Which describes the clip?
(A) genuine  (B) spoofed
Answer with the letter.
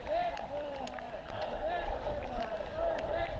B